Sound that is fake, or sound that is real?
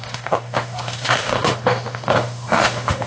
fake